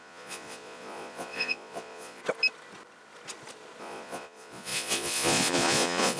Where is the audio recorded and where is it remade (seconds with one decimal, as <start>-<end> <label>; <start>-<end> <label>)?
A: 0.0-2.2 remade; 2.2-3.8 recorded; 3.8-6.2 remade